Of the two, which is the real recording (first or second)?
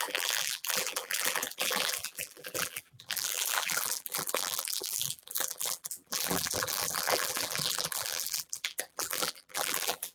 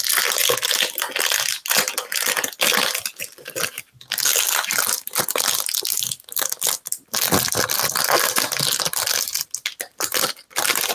second